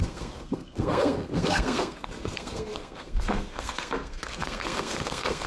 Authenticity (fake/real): fake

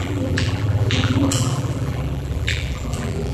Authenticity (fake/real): fake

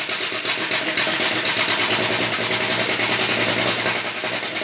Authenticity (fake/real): real